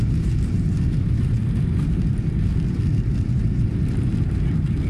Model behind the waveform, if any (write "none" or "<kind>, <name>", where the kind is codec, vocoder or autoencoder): vocoder, BigVGAN v2